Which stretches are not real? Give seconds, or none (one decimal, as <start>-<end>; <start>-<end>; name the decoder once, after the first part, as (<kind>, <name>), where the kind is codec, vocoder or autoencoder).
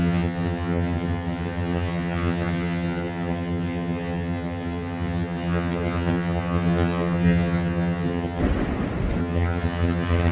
0.0-8.4 (vocoder, HiFi-GAN); 9.2-10.3